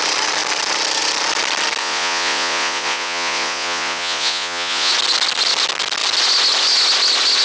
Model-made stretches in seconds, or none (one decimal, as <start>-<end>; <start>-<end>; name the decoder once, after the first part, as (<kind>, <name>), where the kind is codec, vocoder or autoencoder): 1.8-4.9 (vocoder, Vocos)